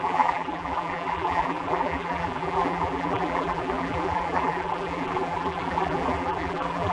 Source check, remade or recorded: remade